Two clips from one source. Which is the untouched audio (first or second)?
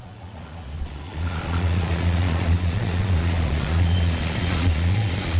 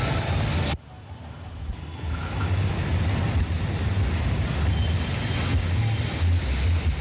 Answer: second